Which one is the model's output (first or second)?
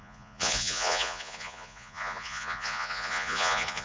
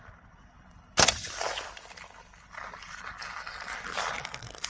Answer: first